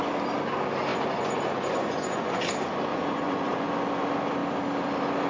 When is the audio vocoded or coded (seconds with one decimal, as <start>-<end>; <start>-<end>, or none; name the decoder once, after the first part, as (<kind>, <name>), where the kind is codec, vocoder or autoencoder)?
0.9-2.4 (vocoder, Vocos); 2.9-3.7